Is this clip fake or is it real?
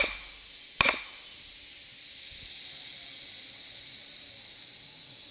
real